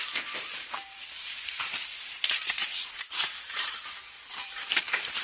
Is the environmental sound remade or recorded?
remade